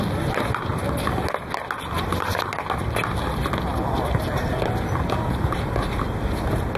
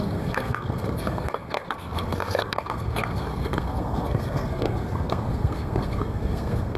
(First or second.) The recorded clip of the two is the first